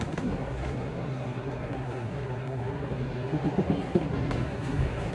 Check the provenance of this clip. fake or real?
fake